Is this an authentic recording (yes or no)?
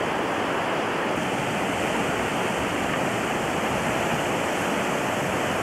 yes